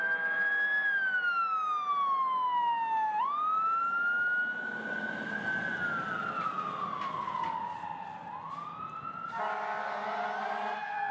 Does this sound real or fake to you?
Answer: real